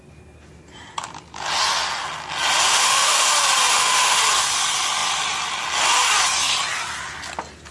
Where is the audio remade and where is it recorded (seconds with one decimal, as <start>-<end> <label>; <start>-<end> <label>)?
0.0-2.7 recorded; 2.7-3.3 remade; 3.3-3.7 recorded; 3.7-4.2 remade; 4.2-7.7 recorded